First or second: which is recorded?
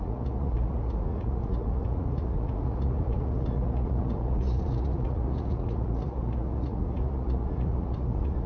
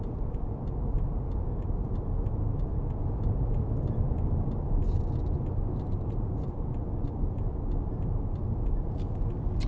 second